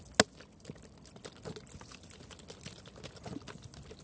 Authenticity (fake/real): real